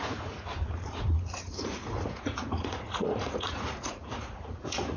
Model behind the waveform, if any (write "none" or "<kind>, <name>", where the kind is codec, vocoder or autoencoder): vocoder, Vocos